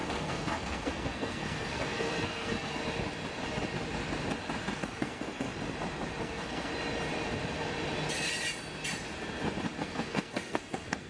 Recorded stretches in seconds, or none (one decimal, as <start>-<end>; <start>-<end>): 2.8-4.8; 5.5-6.2; 6.7-9.8